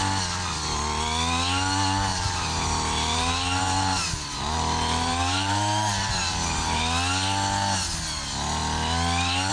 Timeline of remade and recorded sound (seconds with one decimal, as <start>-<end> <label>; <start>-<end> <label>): 0.0-2.1 recorded; 2.1-6.8 remade; 6.8-9.5 recorded